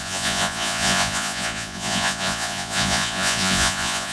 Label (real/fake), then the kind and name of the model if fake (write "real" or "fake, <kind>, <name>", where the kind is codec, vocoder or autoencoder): fake, vocoder, Vocos